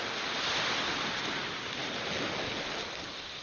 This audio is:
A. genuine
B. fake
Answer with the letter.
A